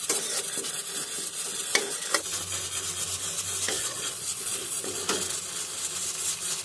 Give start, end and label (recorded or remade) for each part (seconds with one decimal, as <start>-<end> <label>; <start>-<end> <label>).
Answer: 0.0-3.8 recorded; 3.8-4.9 remade; 4.9-6.6 recorded